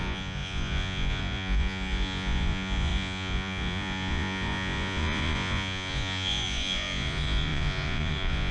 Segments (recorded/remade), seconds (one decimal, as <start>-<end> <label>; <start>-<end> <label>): 0.0-8.5 remade